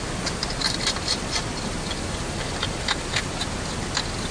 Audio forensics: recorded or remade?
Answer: recorded